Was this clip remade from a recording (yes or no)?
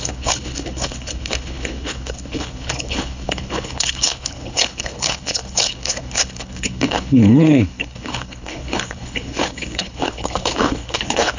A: yes